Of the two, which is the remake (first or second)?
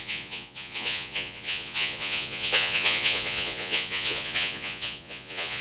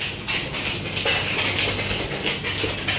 first